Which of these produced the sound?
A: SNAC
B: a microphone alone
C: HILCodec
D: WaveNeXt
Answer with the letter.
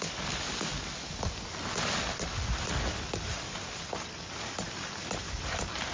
B